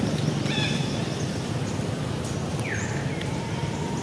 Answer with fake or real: real